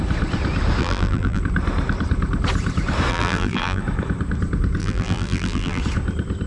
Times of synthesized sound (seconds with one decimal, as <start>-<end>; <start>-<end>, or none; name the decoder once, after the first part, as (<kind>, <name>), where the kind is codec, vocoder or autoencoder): 0.8-1.4 (vocoder, BigVGAN v2); 3.1-3.8; 4.8-5.8